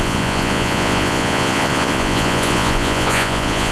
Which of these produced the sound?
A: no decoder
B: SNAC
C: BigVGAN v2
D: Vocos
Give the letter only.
D